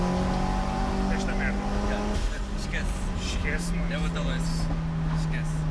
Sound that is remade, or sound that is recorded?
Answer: recorded